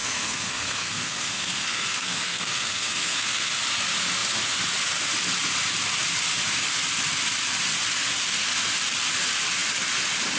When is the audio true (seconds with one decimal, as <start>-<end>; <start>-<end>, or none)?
3.5-10.4